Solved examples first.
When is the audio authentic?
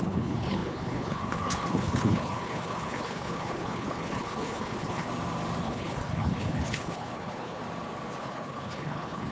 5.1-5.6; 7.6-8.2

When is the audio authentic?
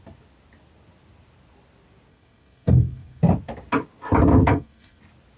0.0-2.1; 3.2-4.5; 5.0-5.4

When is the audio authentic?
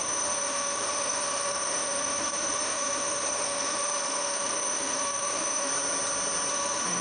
5.7-6.5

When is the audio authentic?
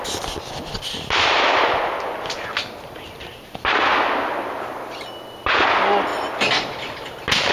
0.0-7.5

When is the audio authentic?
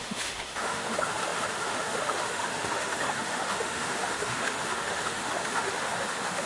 none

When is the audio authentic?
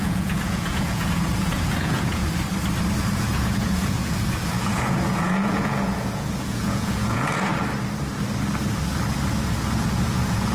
2.2-3.0; 7.5-9.8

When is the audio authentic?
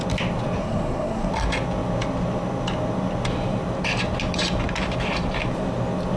0.0-0.6; 1.3-6.2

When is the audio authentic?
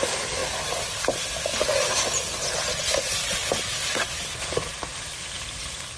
0.0-6.0